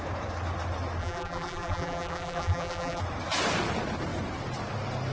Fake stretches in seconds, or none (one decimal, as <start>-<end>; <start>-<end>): 1.0-3.0